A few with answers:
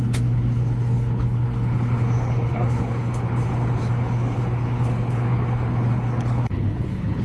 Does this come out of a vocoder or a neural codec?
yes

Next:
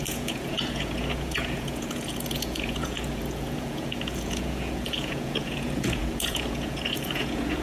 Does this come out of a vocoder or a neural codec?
yes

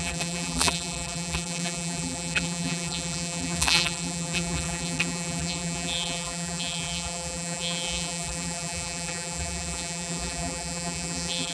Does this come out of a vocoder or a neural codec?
yes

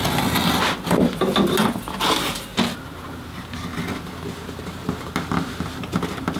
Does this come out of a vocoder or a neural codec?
no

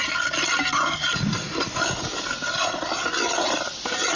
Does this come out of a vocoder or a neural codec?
yes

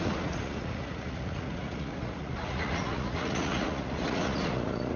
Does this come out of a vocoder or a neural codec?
yes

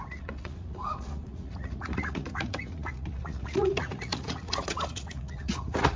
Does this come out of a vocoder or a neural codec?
yes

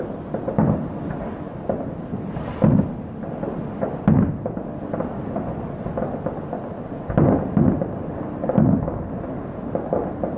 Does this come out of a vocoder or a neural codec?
no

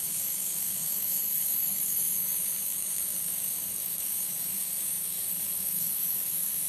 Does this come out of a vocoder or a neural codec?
yes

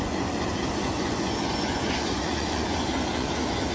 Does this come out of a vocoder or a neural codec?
yes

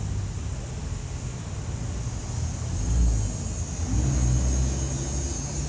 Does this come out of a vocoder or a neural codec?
no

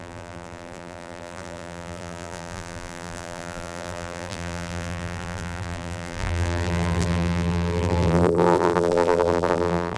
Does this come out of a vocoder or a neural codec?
yes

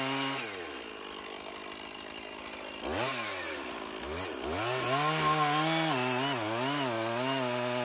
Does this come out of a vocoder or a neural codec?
no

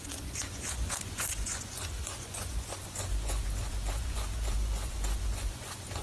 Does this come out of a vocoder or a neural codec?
yes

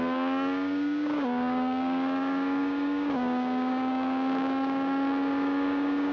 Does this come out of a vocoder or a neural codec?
yes